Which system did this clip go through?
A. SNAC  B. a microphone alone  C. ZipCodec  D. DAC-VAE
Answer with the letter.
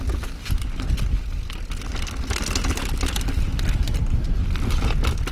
B